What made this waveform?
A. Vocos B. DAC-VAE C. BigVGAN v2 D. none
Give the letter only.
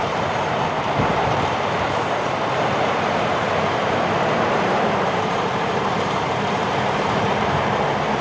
C